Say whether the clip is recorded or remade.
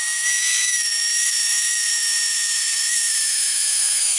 remade